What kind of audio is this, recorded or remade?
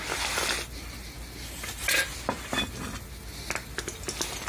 recorded